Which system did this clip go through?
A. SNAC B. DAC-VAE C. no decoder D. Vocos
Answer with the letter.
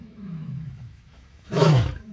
B